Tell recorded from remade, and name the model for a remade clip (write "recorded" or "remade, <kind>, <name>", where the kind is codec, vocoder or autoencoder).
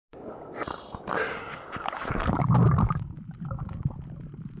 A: recorded